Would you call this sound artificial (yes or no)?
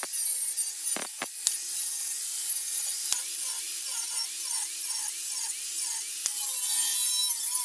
no